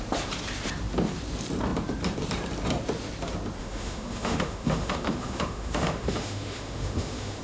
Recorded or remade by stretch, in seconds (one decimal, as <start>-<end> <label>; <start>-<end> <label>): 0.0-3.6 recorded; 3.6-7.4 remade